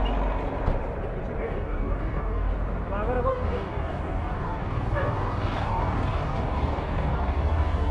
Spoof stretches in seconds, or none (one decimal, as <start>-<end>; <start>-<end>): 1.4-2.5; 3.3-7.9